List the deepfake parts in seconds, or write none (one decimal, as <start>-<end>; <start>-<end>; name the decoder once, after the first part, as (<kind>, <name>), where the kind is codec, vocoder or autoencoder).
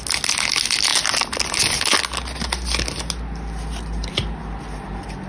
none